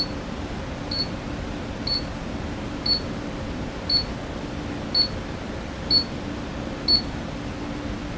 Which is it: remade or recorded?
recorded